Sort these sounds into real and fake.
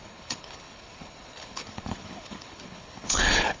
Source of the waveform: fake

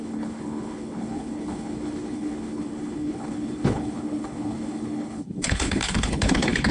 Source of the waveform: fake